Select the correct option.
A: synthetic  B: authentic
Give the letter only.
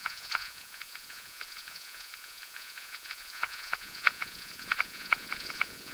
A